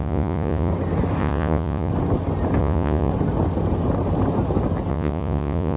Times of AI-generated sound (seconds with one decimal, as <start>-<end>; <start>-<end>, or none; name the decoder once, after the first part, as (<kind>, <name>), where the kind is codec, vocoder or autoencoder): 0.0-0.7 (vocoder, Vocos); 1.2-1.9; 2.6-3.1; 4.9-5.8